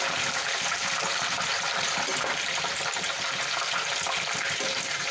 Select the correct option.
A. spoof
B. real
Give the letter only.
A